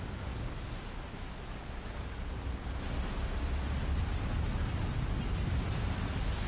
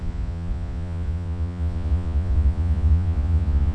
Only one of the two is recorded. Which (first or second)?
first